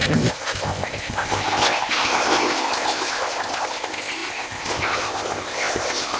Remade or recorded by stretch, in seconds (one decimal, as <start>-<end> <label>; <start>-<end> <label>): 0.0-6.2 remade